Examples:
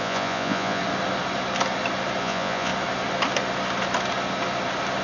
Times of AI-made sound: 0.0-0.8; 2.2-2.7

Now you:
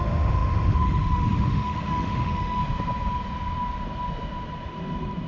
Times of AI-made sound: 0.0-2.6

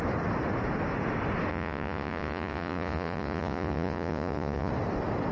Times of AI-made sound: 1.5-4.7

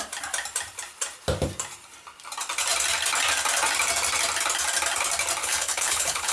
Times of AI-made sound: 5.4-6.3

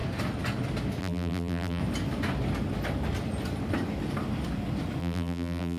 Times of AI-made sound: 1.0-1.8; 5.0-5.8

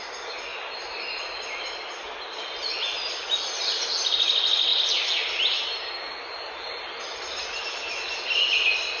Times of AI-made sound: none

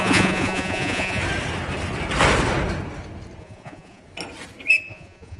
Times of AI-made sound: 0.0-1.2; 3.4-4.0; 4.9-5.4